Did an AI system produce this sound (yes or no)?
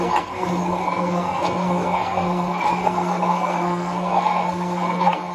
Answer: yes